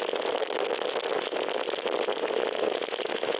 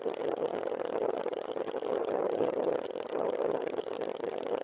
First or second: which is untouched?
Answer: first